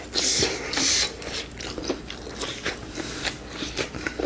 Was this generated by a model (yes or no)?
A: no